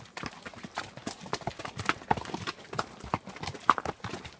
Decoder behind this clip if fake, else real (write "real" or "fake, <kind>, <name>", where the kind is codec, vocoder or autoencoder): real